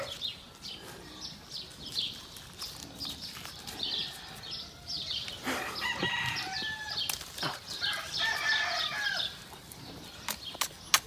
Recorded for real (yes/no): yes